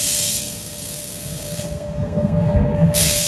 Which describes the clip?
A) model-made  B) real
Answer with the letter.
A